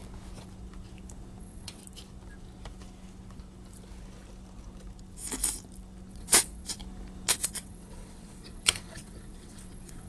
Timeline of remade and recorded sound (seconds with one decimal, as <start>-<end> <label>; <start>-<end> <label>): 0.0-1.4 recorded; 1.4-1.8 remade; 1.8-6.1 recorded; 6.1-6.8 remade; 6.8-7.3 recorded; 7.3-10.1 remade